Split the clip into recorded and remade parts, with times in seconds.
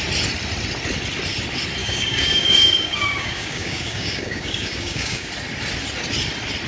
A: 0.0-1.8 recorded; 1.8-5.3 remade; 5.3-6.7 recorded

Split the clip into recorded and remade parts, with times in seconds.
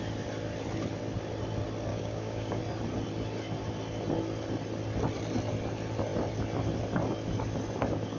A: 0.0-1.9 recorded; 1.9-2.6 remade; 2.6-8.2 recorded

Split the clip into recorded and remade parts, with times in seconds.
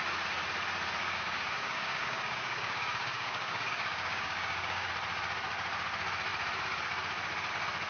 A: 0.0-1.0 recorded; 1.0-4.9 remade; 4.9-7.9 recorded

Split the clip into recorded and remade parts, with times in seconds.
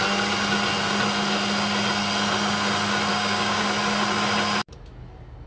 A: 0.0-3.1 recorded; 3.1-3.6 remade; 3.6-5.5 recorded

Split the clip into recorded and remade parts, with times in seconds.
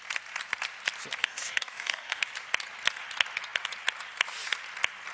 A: 0.0-1.2 recorded; 1.2-2.3 remade; 2.3-5.1 recorded